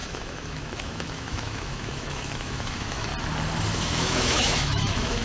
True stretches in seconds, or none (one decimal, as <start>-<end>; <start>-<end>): 3.1-3.7

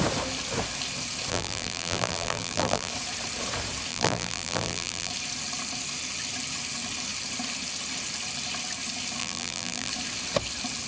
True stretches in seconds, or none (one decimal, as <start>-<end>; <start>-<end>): 0.0-1.3; 2.9-3.9; 5.1-9.2; 9.9-10.9